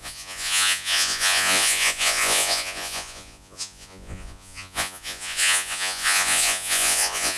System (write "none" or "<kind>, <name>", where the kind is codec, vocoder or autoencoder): vocoder, Vocos